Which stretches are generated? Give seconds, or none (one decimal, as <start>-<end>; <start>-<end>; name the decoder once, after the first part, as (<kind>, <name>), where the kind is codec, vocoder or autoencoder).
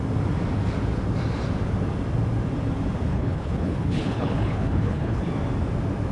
3.1-5.3 (codec, HILCodec)